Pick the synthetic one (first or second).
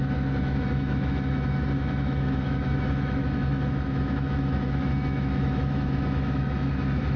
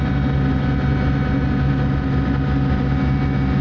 first